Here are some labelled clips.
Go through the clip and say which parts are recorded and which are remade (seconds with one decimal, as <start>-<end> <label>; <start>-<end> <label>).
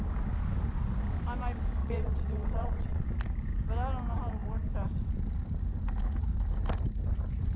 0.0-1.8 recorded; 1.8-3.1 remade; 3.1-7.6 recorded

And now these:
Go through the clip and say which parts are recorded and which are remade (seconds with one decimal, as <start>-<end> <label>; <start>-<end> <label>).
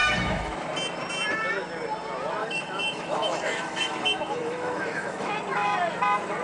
0.0-0.5 remade; 0.5-2.4 recorded; 2.4-5.3 remade; 5.3-6.4 recorded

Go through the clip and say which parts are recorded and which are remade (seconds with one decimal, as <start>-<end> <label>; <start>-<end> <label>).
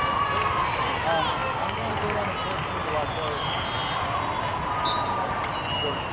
0.0-6.1 recorded